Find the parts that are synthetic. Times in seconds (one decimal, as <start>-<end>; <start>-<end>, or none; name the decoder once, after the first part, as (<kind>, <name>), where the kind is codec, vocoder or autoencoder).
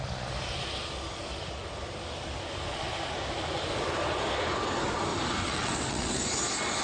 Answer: 5.4-6.2 (vocoder, WaveNeXt)